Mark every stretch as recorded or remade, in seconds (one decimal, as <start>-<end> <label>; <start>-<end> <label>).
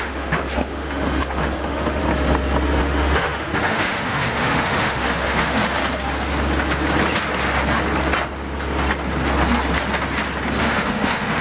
0.0-2.0 remade; 2.0-2.8 recorded; 2.8-5.6 remade; 5.6-10.6 recorded; 10.6-11.4 remade